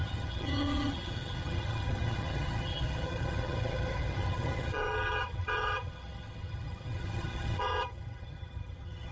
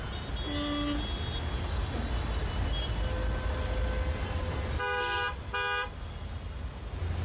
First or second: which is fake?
first